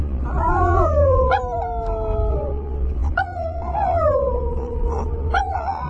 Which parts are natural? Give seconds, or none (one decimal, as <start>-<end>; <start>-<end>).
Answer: 1.4-2.3